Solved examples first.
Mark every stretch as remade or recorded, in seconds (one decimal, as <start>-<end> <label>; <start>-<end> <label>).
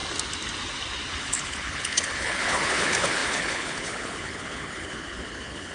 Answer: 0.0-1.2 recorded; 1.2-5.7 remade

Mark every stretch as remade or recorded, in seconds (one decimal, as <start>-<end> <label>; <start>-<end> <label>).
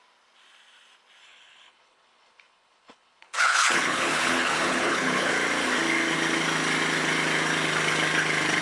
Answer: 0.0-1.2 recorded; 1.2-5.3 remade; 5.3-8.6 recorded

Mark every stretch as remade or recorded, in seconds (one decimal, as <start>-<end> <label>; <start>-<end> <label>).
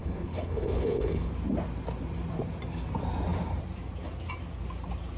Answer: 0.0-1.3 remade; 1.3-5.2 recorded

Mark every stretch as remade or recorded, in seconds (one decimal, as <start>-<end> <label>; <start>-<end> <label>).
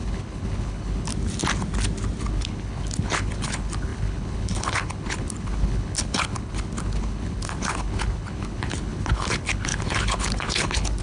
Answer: 0.0-1.1 remade; 1.1-2.3 recorded; 2.3-11.0 remade